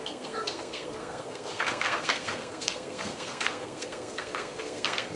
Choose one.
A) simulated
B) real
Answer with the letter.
A